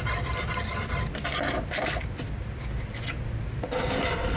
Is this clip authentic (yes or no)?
yes